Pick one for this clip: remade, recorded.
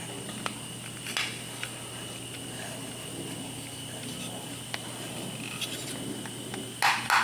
recorded